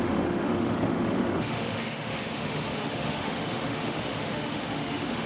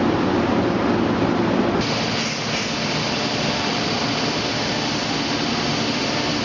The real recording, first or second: second